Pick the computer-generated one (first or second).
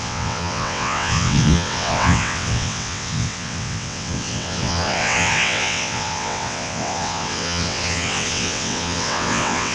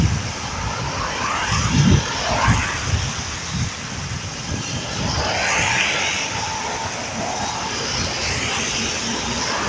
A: first